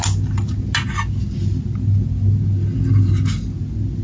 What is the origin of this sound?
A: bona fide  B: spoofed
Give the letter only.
A